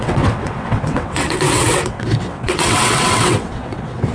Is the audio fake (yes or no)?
yes